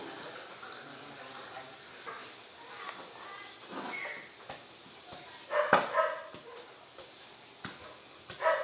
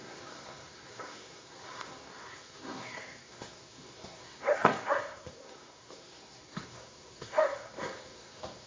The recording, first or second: first